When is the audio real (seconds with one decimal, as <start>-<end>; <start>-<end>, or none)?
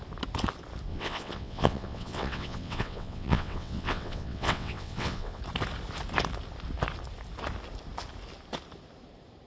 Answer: 0.0-0.9; 5.4-9.5